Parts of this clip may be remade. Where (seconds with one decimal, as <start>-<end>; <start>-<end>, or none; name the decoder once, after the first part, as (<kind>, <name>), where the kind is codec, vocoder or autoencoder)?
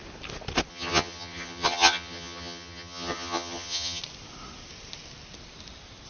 0.7-4.0 (vocoder, HiFi-GAN)